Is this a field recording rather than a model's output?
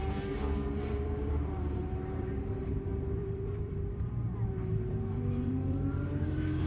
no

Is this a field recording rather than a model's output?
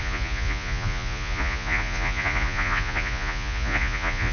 no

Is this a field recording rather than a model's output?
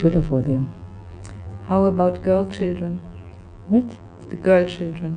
no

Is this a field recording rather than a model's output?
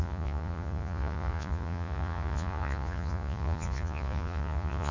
no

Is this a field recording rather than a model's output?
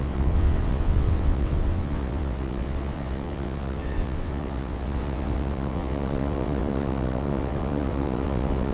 no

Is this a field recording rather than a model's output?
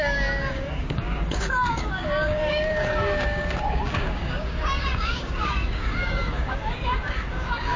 no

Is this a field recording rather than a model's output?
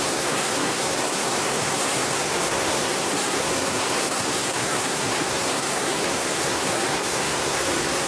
no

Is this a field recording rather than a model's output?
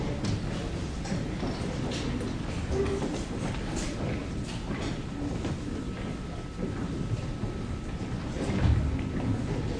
yes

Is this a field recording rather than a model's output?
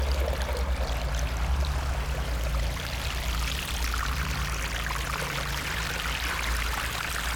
yes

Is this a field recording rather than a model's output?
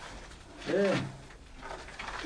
yes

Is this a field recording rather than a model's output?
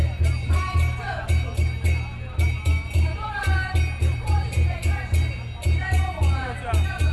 yes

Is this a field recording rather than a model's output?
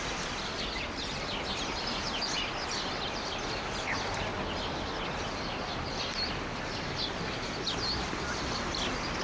yes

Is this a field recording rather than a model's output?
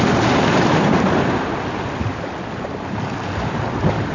yes